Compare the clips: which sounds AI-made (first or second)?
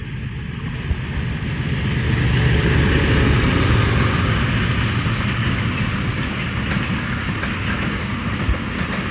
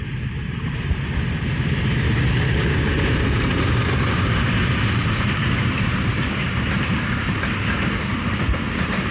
second